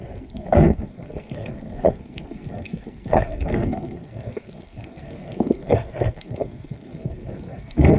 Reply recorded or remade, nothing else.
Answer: remade